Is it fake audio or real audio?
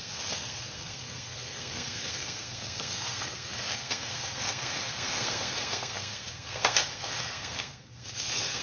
fake